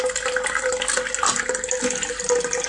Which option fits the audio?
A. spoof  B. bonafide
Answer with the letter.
B